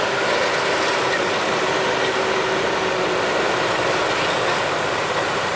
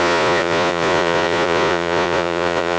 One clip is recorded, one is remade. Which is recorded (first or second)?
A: first